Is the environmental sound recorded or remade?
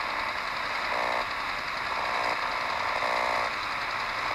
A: recorded